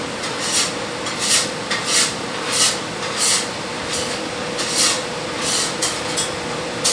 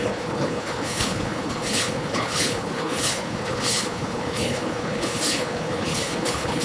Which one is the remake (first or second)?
second